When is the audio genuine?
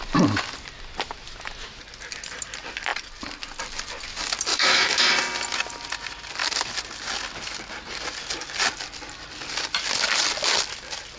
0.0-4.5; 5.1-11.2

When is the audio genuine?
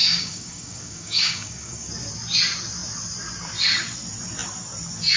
1.9-5.2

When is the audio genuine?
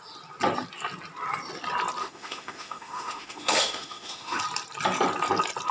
0.0-2.0; 4.4-5.7